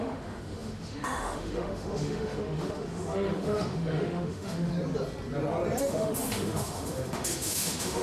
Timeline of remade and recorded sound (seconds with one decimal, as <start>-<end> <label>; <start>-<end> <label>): 0.0-4.7 remade; 4.7-5.8 recorded; 5.8-8.0 remade